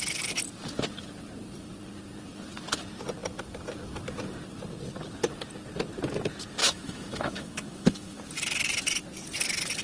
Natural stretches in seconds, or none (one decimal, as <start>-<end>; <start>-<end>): 0.0-6.6; 8.2-9.8